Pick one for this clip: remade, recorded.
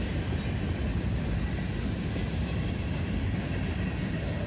recorded